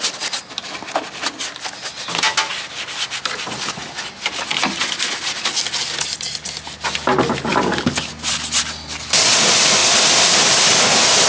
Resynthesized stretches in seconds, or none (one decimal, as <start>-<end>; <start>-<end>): 7.5-8.1